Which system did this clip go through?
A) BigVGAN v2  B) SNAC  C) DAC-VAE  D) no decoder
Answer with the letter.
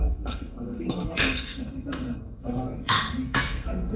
B